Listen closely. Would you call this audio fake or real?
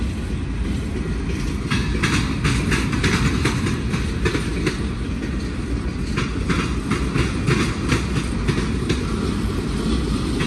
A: real